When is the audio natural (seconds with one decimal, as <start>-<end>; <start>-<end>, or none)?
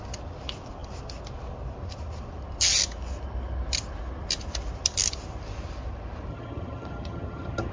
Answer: 0.0-6.3